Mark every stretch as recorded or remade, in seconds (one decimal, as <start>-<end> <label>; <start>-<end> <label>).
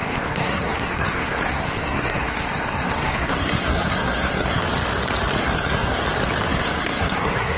0.0-4.6 remade; 4.6-5.4 recorded; 5.4-6.0 remade; 6.0-6.5 recorded; 6.5-7.6 remade